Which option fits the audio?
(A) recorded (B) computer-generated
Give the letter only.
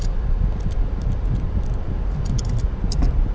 A